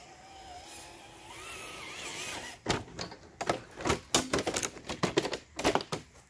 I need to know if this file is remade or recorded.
recorded